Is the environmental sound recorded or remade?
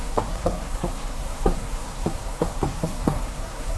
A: remade